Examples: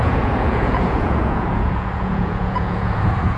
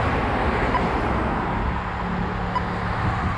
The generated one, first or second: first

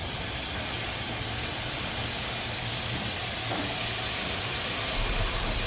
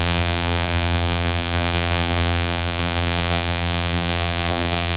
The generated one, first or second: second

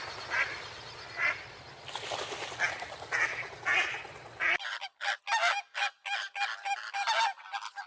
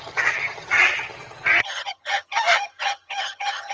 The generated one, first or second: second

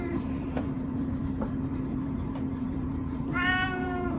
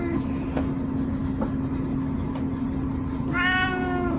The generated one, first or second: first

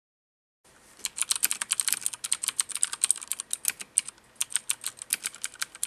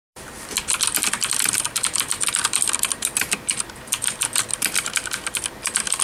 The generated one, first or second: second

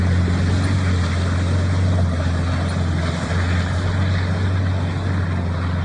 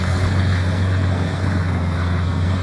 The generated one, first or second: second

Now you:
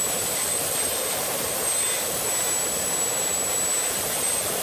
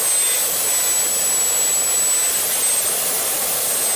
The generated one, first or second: first